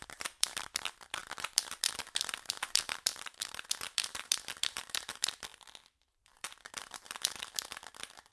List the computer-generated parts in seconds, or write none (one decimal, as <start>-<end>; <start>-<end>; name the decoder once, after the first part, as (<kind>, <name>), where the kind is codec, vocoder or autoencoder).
0.0-8.3 (vocoder, BigVGAN v2)

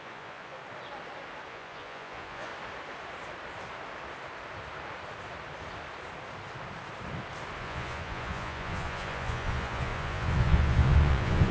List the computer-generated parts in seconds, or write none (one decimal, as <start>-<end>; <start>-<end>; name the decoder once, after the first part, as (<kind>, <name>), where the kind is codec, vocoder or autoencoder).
0.0-0.6 (vocoder, Vocos); 1.5-2.5; 7.6-11.5

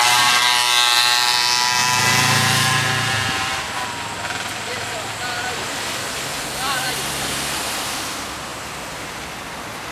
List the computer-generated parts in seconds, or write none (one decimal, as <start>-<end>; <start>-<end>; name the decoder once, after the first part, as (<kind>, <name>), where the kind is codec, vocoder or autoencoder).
none